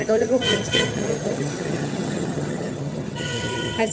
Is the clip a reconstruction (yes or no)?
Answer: yes